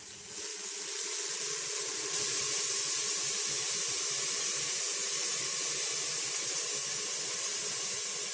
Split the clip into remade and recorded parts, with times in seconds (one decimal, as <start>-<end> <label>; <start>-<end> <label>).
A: 0.0-8.3 recorded